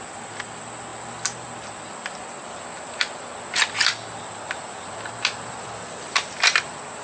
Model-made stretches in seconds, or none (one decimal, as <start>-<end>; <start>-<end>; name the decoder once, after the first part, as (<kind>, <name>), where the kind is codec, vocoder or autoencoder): none